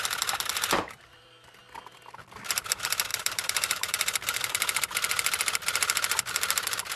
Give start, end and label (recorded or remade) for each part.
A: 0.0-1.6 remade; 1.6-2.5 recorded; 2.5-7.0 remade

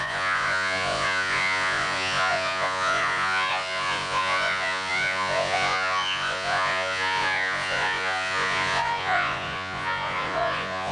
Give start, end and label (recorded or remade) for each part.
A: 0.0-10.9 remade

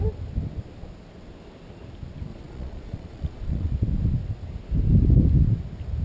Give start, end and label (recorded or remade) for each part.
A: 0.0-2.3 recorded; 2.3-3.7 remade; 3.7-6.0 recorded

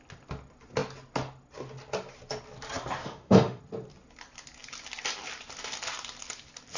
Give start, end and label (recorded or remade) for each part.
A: 0.0-3.0 recorded; 3.0-3.6 remade; 3.6-6.8 recorded

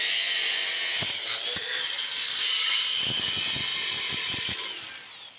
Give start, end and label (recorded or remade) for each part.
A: 0.0-0.7 remade; 0.7-3.2 recorded; 3.2-3.7 remade; 3.7-5.4 recorded

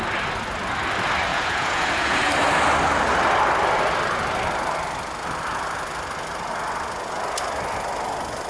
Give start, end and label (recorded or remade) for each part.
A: 0.0-1.3 recorded; 1.3-2.3 remade; 2.3-8.5 recorded

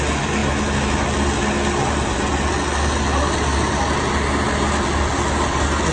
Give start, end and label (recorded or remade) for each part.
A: 0.0-5.9 recorded

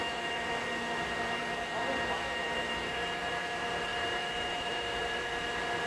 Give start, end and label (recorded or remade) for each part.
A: 0.0-3.9 recorded; 3.9-5.3 remade; 5.3-5.9 recorded